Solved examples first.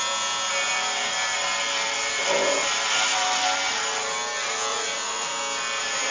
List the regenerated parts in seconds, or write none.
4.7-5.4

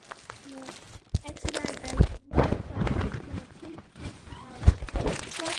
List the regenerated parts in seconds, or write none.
2.1-5.6

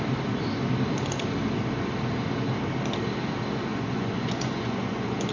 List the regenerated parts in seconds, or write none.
3.7-5.3

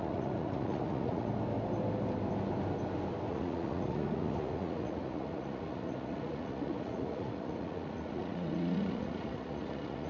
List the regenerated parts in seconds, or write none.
0.0-1.3; 3.3-10.1

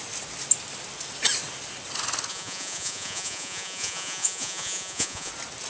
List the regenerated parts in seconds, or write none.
2.3-5.3

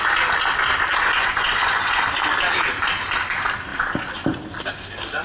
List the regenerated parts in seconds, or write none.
0.9-2.0

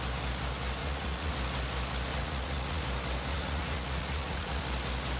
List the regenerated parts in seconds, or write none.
0.8-1.3; 2.1-2.8; 3.3-4.6

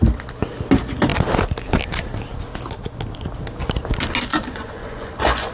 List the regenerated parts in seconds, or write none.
4.3-5.5